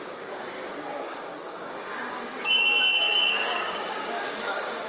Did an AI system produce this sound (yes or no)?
yes